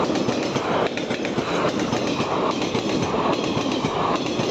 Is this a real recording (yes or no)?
yes